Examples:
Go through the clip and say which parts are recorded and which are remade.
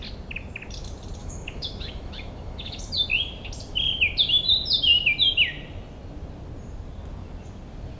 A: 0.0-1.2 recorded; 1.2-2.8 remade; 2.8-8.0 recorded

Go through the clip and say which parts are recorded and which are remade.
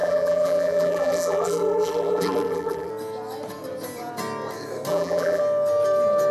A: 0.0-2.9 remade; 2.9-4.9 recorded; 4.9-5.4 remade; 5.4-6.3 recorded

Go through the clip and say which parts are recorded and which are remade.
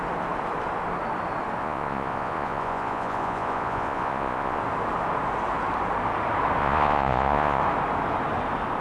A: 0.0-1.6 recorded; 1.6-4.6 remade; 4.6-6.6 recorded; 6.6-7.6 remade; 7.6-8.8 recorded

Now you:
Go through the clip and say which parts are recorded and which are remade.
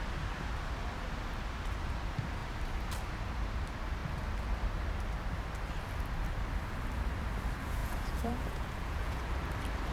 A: 0.0-7.8 recorded; 7.8-9.3 remade; 9.3-9.9 recorded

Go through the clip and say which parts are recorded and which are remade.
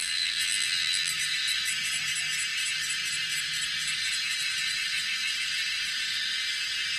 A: 0.0-1.1 remade; 1.1-7.0 recorded